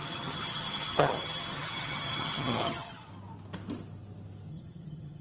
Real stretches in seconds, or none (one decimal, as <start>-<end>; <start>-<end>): 3.1-4.5